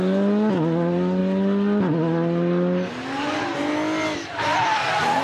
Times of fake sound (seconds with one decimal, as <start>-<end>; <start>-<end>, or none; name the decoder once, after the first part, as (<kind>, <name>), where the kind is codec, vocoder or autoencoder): none